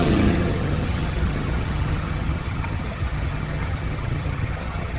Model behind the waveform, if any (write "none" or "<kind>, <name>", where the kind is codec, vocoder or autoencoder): vocoder, HiFi-GAN